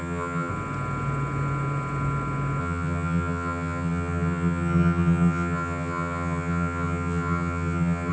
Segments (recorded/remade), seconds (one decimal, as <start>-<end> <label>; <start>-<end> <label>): 0.0-0.5 remade; 0.5-2.6 recorded; 2.6-8.1 remade